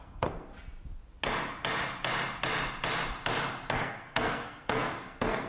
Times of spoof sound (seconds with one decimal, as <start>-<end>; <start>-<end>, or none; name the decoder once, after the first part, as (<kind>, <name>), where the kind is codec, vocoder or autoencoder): 0.0-0.5 (codec, SNAC); 3.8-5.5